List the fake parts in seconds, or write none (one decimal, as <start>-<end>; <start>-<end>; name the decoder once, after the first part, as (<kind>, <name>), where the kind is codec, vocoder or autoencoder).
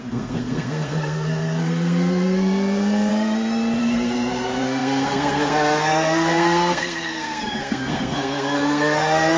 0.0-3.1 (codec, SNAC); 3.8-9.4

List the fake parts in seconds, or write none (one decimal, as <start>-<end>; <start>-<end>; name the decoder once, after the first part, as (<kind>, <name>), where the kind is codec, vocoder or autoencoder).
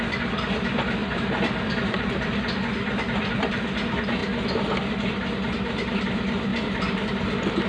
1.0-2.6 (vocoder, BigVGAN v2); 6.5-7.1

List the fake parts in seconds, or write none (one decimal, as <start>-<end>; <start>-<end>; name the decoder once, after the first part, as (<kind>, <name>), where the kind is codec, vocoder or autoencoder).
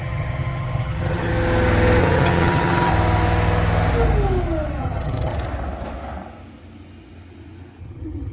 0.0-1.3 (vocoder, HiFi-GAN); 2.0-2.9; 4.8-5.3; 7.8-8.3